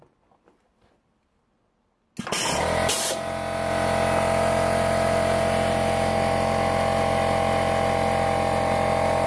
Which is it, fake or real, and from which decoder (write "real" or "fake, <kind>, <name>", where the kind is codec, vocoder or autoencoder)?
real